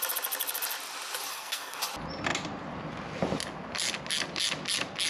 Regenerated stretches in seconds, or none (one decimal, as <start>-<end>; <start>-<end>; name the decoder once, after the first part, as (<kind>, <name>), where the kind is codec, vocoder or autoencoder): 1.3-1.8 (codec, SNAC)